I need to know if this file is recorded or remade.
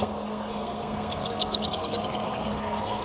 remade